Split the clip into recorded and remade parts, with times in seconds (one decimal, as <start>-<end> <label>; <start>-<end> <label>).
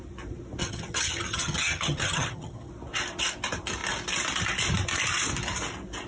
0.0-0.6 recorded; 0.6-2.7 remade; 2.7-6.1 recorded